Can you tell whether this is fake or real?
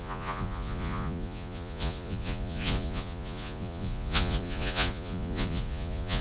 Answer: fake